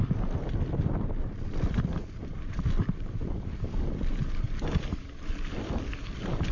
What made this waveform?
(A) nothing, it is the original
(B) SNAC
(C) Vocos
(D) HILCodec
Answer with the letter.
A